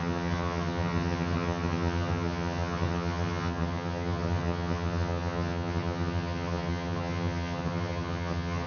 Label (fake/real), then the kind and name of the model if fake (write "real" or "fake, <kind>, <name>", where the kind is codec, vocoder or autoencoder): fake, vocoder, HiFi-GAN